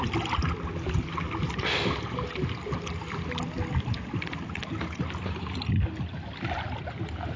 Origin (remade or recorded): recorded